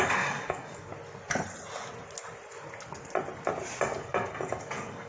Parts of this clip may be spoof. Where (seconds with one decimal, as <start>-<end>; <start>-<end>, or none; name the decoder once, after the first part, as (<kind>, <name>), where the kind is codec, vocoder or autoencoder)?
0.0-0.9 (codec, DAC); 4.0-5.1